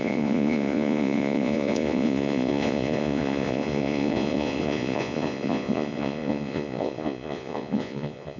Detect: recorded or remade remade